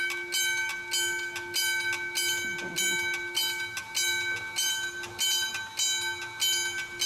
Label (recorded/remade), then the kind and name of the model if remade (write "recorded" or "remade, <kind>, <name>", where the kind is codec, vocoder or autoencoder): recorded